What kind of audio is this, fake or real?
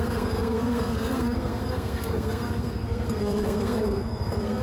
fake